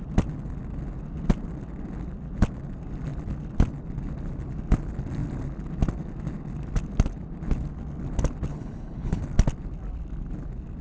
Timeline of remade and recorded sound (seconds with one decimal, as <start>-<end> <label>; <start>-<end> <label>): 0.0-8.5 recorded; 8.5-9.2 remade; 9.2-10.8 recorded